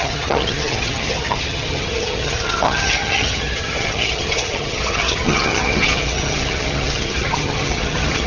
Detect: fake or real fake